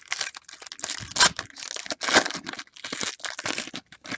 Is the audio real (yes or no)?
yes